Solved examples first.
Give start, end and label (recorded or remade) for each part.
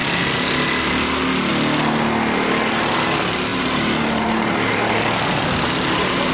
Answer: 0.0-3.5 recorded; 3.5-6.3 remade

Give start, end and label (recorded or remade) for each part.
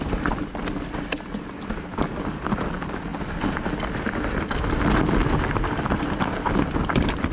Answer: 0.0-3.1 recorded; 3.1-4.7 remade; 4.7-7.3 recorded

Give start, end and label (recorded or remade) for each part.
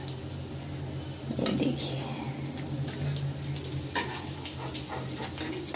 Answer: 0.0-5.8 recorded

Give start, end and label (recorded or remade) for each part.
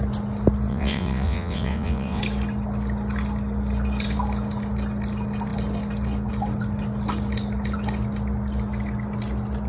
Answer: 0.0-0.7 recorded; 0.7-2.2 remade; 2.2-9.7 recorded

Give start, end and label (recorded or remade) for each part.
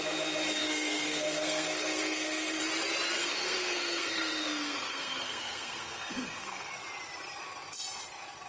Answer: 0.0-0.6 recorded; 0.6-2.6 remade; 2.6-3.2 recorded; 3.2-6.7 remade; 6.7-8.5 recorded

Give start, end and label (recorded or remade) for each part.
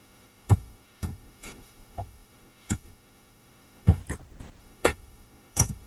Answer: 0.0-4.0 remade; 4.0-4.6 recorded; 4.6-5.9 remade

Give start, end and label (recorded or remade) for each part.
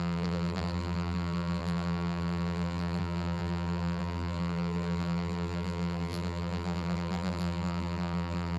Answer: 0.0-8.6 remade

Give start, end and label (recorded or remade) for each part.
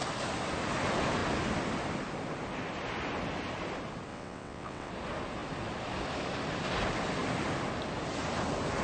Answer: 0.0-4.1 recorded; 4.1-4.9 remade; 4.9-8.8 recorded